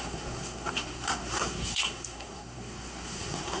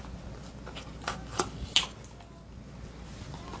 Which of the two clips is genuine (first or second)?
second